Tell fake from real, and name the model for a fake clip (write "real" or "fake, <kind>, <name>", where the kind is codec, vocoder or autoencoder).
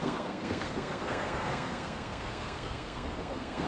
fake, codec, SNAC